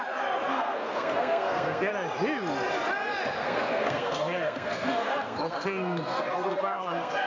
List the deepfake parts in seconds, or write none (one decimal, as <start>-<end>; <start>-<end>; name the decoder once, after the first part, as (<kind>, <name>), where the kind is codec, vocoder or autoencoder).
0.5-1.9 (codec, SNAC); 3.4-7.3